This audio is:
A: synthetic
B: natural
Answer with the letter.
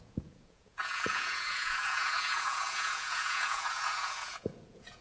A